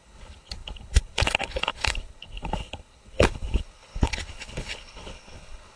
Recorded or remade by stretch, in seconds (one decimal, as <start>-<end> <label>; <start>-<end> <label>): 0.0-5.8 remade